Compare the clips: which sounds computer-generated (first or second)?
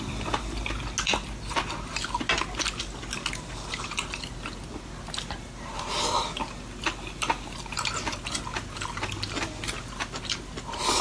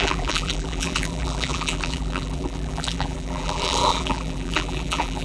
second